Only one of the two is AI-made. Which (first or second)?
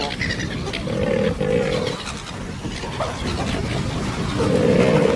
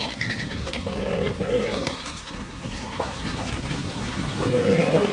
second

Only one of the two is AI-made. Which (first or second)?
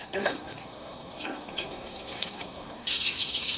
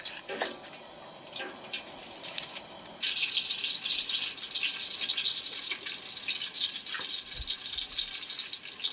first